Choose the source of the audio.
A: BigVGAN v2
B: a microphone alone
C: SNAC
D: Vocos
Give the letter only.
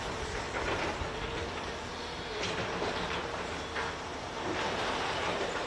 A